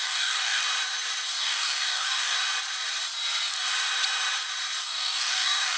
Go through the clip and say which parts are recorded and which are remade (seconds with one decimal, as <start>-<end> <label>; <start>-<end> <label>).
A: 0.0-0.6 remade; 0.6-1.4 recorded; 1.4-2.4 remade; 2.4-4.8 recorded; 4.8-5.8 remade